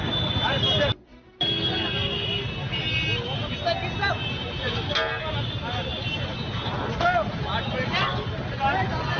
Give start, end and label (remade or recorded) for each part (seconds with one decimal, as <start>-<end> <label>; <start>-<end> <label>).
0.0-9.2 recorded